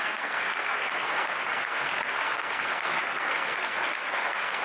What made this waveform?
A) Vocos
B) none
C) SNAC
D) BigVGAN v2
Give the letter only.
C